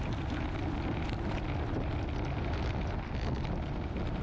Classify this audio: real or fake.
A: real